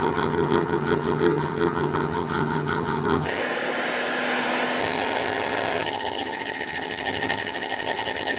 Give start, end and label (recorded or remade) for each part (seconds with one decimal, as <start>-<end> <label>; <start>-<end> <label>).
0.0-3.4 remade; 3.4-4.8 recorded; 4.8-8.4 remade